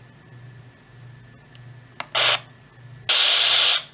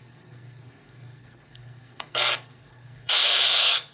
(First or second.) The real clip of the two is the first